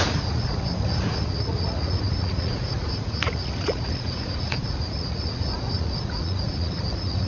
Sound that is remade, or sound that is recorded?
remade